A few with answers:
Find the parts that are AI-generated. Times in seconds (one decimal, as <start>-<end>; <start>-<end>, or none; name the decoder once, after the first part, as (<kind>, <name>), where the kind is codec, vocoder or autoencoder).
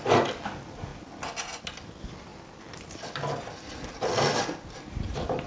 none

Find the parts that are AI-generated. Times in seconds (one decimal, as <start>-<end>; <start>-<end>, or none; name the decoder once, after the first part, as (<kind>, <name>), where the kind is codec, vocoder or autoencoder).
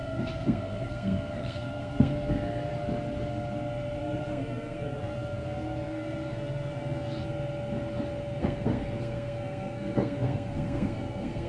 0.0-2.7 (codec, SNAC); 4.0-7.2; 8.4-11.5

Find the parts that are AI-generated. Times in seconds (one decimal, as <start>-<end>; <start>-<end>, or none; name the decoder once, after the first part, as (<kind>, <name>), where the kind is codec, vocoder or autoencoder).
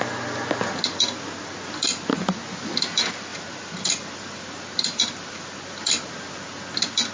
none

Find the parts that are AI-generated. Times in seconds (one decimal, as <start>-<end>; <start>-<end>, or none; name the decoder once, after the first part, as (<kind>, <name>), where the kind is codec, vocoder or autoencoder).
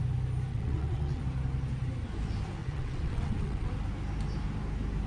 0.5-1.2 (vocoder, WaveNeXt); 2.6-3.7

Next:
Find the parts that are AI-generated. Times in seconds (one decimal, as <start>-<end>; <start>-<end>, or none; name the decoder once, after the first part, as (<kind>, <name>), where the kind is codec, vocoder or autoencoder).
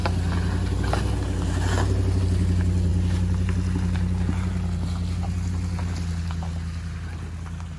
none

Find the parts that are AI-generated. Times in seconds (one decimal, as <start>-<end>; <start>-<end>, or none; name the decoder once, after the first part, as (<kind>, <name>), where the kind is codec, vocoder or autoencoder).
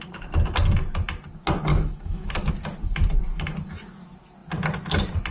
1.7-2.5 (autoencoder, DAC-VAE)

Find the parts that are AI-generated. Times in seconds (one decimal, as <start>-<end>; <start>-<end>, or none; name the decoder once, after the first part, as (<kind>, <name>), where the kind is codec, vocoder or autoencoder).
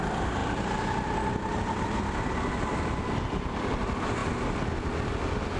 none